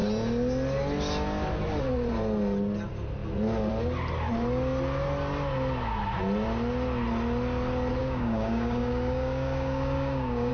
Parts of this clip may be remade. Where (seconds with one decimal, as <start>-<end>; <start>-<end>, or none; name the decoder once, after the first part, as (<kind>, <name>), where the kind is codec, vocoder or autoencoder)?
8.0-10.5 (codec, DAC)